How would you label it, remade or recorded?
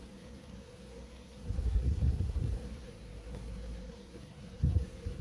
remade